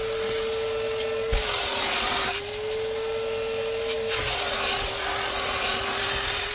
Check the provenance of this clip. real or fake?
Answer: real